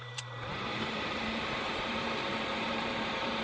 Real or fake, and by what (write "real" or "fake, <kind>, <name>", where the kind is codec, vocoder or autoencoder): fake, vocoder, BigVGAN v2